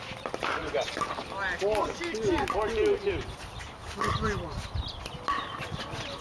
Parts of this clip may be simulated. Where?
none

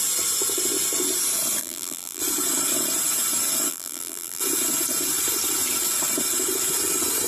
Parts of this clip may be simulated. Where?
1.6-2.2; 3.7-4.4

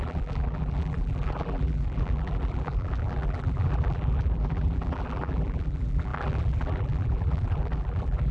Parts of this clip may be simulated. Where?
0.0-8.3

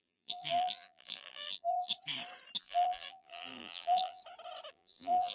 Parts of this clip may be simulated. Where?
0.0-1.9; 2.6-4.2; 4.7-5.3

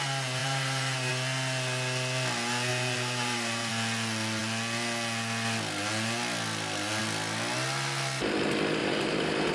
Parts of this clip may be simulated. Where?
0.4-1.1; 2.7-3.7; 8.8-9.5

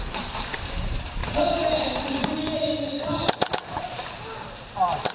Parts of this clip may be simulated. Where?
0.0-1.2; 3.5-5.1